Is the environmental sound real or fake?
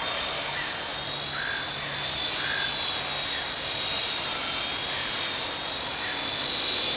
real